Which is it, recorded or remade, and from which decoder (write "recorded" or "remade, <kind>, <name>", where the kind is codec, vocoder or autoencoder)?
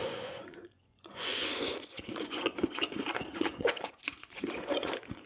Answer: remade, vocoder, Vocos